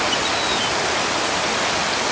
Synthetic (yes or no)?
no